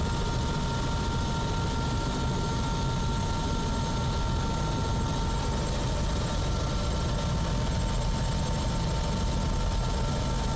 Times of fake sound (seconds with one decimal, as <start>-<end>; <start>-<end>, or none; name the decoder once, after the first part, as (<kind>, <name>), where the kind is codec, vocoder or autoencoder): none